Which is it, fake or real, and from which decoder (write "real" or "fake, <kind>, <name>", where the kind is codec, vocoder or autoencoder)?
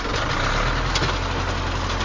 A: real